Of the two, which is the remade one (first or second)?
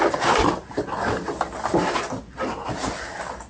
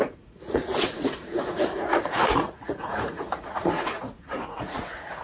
second